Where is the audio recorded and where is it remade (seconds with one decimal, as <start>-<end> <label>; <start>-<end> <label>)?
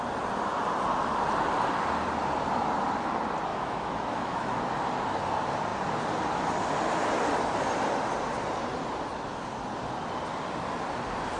0.0-3.5 recorded; 3.5-4.6 remade; 4.6-11.4 recorded